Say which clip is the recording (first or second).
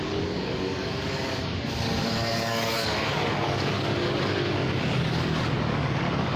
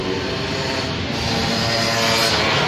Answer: second